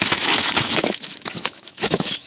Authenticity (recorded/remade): remade